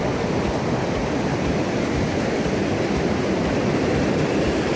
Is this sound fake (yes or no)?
yes